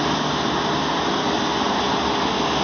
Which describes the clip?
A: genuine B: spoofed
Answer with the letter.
A